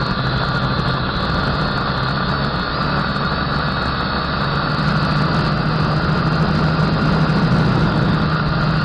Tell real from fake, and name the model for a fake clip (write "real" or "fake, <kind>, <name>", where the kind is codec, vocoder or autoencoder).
real